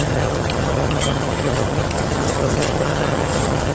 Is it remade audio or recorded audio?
remade